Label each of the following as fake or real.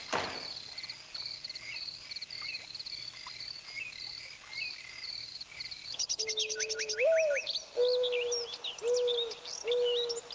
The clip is real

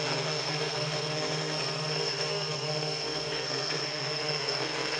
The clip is fake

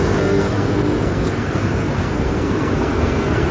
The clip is fake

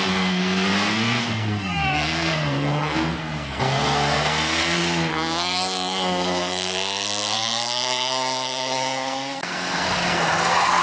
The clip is fake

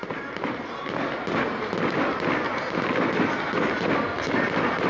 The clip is real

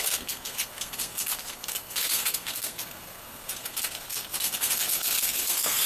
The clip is fake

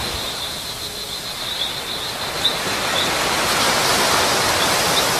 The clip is real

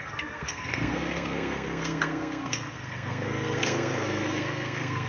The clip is fake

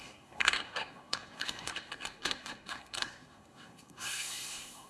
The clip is fake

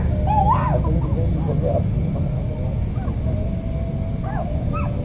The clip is real